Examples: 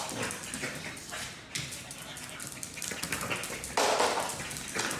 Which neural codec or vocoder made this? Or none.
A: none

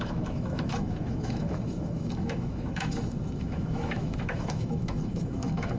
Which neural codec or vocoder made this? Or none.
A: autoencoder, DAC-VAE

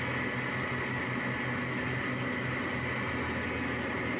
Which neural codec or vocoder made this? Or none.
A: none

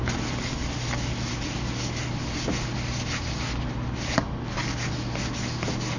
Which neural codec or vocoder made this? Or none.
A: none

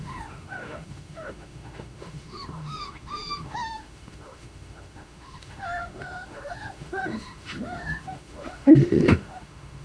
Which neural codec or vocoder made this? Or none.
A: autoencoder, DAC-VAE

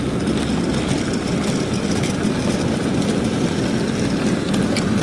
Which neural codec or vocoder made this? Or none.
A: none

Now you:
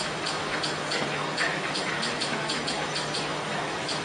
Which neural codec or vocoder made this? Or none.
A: autoencoder, DAC-VAE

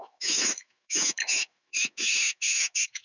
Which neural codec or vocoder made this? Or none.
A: autoencoder, DAC-VAE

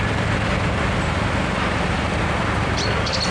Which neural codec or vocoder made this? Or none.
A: none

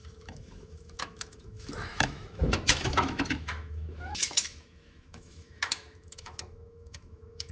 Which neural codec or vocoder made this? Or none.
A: autoencoder, DAC-VAE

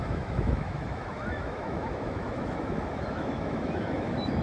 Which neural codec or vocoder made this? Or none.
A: autoencoder, DAC-VAE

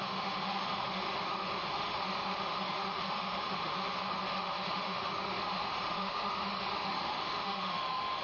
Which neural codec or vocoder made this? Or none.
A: autoencoder, DAC-VAE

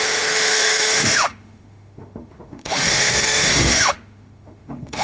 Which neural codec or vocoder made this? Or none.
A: autoencoder, DAC-VAE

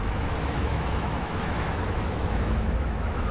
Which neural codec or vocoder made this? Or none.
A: autoencoder, DAC-VAE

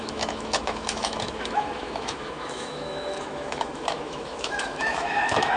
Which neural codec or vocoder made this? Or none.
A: autoencoder, DAC-VAE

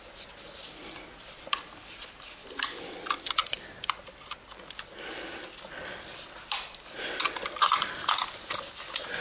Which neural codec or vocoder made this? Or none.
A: none